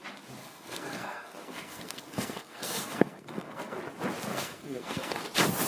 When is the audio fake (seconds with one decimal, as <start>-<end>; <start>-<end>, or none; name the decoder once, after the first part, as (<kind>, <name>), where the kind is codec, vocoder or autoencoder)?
0.4-3.8 (codec, SNAC); 4.3-5.2